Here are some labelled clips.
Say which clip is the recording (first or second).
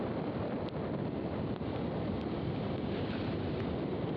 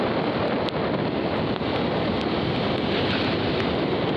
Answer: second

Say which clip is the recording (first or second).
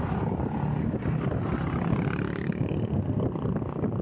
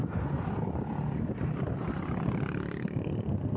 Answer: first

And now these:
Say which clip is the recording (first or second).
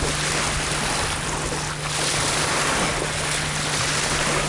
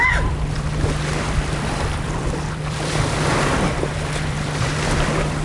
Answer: first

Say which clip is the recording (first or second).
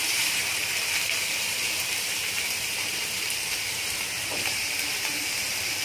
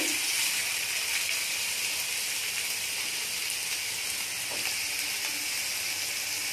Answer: second